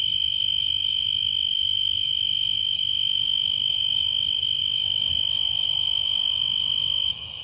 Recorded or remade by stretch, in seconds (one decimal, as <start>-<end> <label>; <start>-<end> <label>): 0.0-1.5 recorded; 1.5-2.1 remade; 2.1-2.6 recorded; 2.6-3.7 remade; 3.7-4.6 recorded; 4.6-5.1 remade; 5.1-7.4 recorded